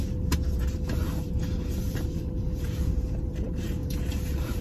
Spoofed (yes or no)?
yes